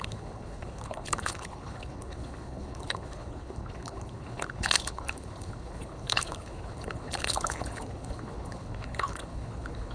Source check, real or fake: fake